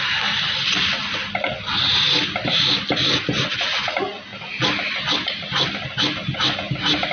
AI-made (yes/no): no